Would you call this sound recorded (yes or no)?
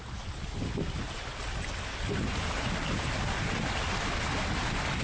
yes